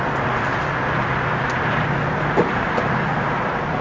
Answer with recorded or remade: recorded